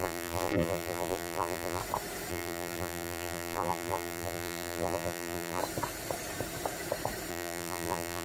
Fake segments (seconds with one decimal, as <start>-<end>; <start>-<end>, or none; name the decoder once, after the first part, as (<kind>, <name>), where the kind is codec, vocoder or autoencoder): 0.0-1.8 (vocoder, BigVGAN v2); 2.3-5.6; 7.3-8.2